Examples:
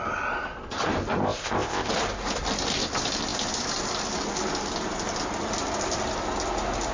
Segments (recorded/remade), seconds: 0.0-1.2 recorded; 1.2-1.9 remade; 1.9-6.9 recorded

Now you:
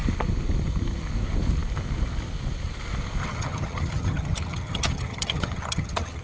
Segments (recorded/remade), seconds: 0.0-3.2 recorded; 3.2-6.2 remade